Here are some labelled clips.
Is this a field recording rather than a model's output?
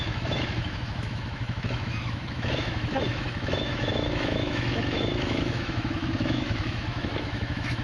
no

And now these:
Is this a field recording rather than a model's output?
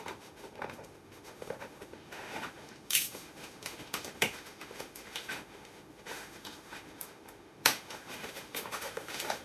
no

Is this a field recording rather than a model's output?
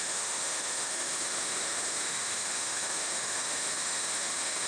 no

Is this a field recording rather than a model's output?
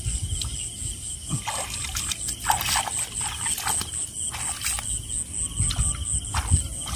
yes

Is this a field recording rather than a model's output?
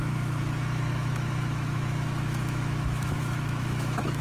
no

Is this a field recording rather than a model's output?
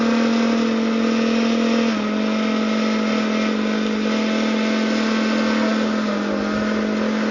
yes